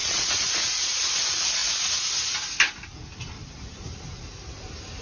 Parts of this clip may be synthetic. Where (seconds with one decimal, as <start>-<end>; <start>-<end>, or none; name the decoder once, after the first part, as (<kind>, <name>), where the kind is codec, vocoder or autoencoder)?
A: 0.0-1.1 (vocoder, Vocos)